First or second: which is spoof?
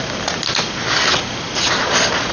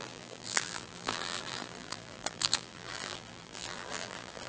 second